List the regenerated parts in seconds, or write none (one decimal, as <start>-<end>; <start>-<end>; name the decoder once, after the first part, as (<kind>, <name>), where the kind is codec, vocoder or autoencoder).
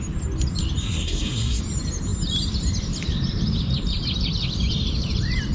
0.8-1.6 (codec, SNAC)